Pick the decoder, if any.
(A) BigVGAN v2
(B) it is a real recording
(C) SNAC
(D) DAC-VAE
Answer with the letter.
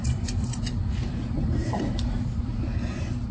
A